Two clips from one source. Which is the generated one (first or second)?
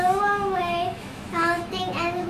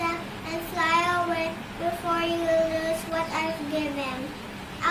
first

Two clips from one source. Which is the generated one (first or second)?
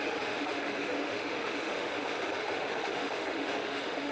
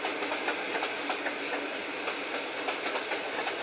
first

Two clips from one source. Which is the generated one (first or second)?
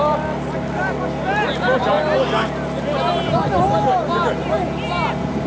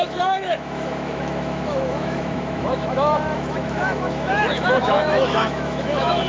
second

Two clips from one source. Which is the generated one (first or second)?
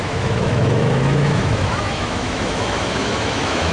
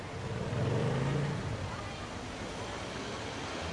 first